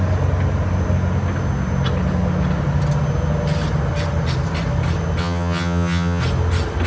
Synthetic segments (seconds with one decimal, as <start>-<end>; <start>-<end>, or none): 5.2-6.2